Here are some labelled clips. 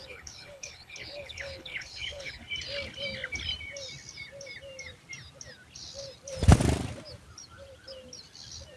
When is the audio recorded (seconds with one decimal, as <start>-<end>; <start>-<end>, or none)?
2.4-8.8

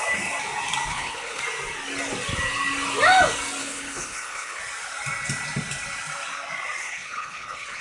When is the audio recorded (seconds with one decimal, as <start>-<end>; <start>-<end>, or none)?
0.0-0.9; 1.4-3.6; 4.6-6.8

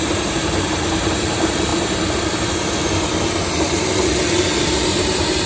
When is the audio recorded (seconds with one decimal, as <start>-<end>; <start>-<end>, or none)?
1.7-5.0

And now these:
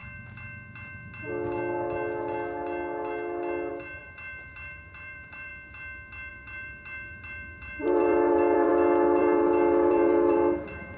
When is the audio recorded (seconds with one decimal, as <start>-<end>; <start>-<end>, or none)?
0.0-3.7; 5.5-6.3; 8.7-9.2